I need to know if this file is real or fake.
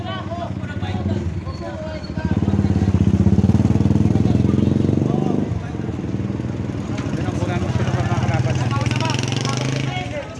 real